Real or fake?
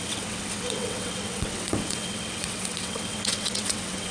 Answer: fake